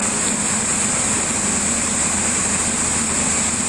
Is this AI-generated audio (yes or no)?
no